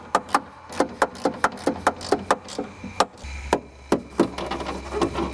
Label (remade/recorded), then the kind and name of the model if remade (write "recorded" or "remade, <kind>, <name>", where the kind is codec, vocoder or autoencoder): recorded